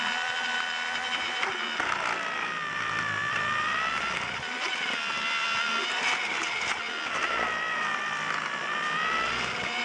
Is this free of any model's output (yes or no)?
yes